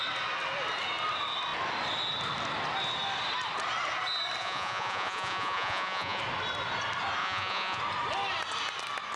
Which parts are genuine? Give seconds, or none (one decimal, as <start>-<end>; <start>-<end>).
0.0-4.4; 6.2-7.2; 7.8-9.2